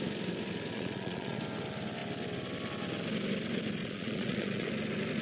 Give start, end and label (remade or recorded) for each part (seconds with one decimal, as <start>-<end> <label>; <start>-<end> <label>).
0.0-0.7 recorded; 0.7-1.4 remade; 1.4-3.8 recorded; 3.8-4.7 remade; 4.7-5.2 recorded